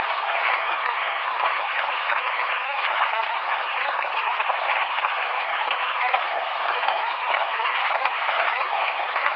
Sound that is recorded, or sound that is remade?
remade